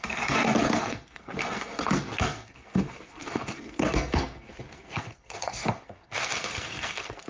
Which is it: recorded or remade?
remade